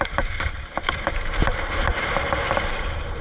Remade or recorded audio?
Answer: remade